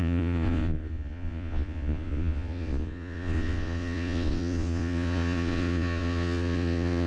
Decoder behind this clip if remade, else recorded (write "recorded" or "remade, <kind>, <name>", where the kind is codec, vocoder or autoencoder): remade, vocoder, Vocos